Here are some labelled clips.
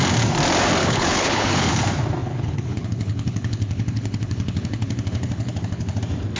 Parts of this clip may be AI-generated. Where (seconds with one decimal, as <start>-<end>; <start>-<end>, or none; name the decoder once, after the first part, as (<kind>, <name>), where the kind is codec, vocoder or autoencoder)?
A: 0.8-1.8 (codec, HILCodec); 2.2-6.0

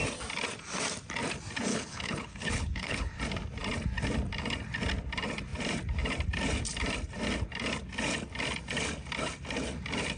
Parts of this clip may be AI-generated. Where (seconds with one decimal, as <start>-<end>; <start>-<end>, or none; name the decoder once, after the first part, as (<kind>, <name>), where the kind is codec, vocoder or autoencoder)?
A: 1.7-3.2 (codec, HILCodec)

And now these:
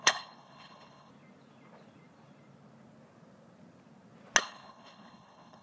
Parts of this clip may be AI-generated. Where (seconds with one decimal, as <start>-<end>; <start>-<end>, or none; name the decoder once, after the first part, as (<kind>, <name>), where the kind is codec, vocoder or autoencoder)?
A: 0.0-1.1 (codec, HILCodec); 4.4-5.6

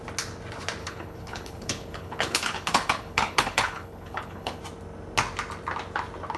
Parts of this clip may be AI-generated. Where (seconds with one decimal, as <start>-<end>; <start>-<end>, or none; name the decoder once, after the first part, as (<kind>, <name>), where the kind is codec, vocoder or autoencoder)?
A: 0.8-4.6 (codec, HILCodec)

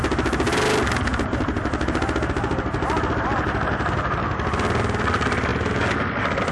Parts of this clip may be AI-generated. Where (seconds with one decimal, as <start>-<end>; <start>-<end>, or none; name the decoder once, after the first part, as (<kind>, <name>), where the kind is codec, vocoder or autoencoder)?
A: none

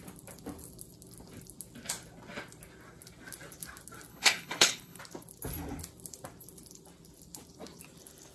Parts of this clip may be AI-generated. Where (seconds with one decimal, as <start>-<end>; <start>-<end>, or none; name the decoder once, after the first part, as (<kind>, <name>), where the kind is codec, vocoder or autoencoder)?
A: 4.1-5.0 (codec, HILCodec)

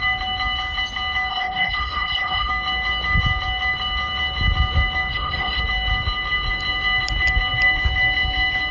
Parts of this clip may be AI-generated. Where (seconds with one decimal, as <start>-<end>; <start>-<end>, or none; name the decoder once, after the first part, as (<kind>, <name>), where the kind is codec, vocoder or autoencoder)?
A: 1.3-2.5 (codec, HILCodec); 5.1-5.6